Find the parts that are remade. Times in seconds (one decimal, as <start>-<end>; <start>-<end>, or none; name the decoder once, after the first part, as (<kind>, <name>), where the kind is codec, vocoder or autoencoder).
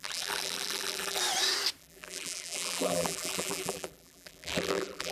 0.0-1.2 (vocoder, BigVGAN v2); 1.8-5.1